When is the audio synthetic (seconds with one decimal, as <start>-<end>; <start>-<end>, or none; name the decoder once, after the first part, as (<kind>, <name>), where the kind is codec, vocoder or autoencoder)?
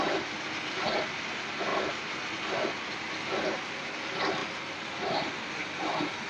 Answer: 1.7-2.3 (vocoder, BigVGAN v2); 4.4-5.5